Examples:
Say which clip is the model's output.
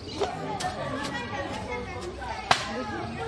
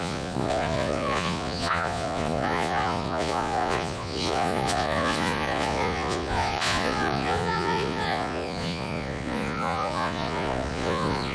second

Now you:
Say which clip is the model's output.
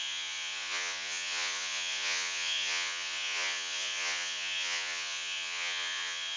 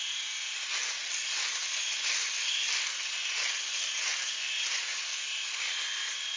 first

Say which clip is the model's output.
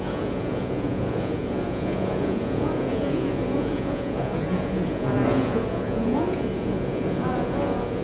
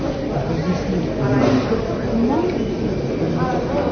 first